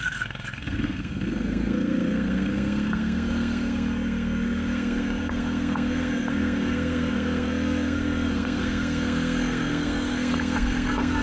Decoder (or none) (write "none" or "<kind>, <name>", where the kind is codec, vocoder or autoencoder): codec, SNAC